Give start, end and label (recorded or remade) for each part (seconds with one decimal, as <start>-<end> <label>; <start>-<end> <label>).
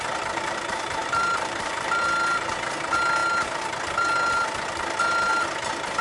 0.0-1.0 recorded; 1.0-2.0 remade; 2.0-6.0 recorded